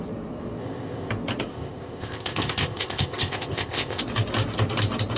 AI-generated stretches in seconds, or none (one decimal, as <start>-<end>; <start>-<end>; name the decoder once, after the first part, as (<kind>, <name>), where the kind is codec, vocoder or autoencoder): 0.6-1.1 (codec, ZipCodec); 1.5-4.0

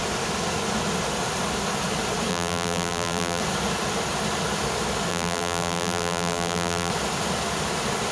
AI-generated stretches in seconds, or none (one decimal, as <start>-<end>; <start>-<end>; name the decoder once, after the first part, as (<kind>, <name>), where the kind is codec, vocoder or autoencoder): 2.3-3.4 (vocoder, BigVGAN v2); 5.1-6.9

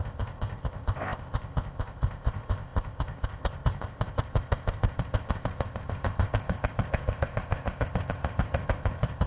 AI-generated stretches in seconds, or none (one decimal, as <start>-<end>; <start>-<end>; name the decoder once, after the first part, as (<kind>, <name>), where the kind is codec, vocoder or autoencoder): 0.0-9.3 (codec, ZipCodec)

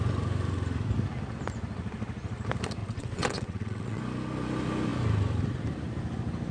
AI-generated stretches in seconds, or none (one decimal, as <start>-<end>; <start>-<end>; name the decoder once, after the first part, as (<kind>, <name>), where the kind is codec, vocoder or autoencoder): 2.8-4.0 (vocoder, WaveNeXt)

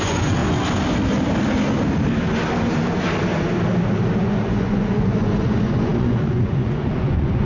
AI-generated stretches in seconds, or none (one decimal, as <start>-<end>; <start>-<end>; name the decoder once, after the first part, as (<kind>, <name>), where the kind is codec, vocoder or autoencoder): 0.0-0.4 (vocoder, Vocos); 4.2-7.5

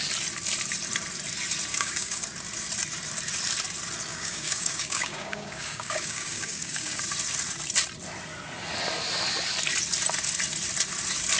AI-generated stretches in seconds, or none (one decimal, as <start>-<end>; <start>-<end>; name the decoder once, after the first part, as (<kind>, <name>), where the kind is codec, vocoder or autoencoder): 1.7-2.2 (codec, DAC); 4.1-7.0

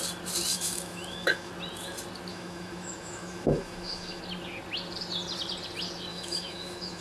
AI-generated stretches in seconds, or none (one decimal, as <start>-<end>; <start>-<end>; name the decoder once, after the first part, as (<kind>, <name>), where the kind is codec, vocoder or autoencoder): 0.5-1.5 (autoencoder, DAC-VAE); 2.3-4.2; 6.1-7.0

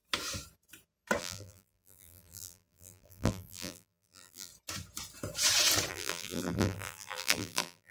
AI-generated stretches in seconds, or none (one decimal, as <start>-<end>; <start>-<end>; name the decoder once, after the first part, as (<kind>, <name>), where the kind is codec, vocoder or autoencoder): 1.2-4.5 (vocoder, BigVGAN v2); 5.9-7.9